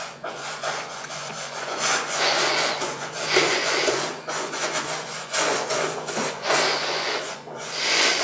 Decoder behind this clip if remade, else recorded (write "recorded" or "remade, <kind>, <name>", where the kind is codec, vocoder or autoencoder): remade, vocoder, Vocos